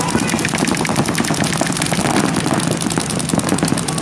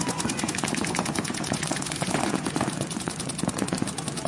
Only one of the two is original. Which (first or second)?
first